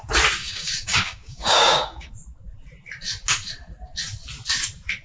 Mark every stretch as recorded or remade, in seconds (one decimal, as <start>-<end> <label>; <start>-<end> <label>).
0.0-0.4 recorded; 0.4-2.1 remade; 2.1-5.0 recorded